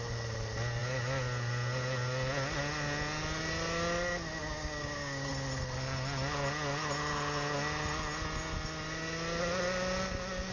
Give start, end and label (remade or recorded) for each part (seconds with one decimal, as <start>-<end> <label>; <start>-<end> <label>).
0.0-4.4 recorded; 4.4-5.3 remade; 5.3-10.5 recorded